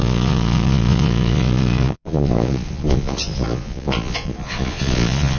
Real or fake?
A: fake